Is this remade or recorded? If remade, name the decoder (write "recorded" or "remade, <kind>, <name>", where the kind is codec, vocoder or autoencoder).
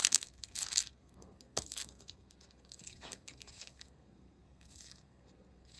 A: remade, codec, SNAC